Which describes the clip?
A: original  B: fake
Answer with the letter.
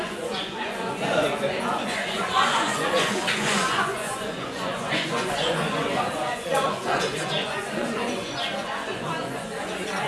B